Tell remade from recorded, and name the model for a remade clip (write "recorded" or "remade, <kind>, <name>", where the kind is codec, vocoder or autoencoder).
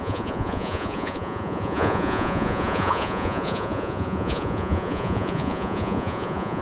remade, vocoder, Vocos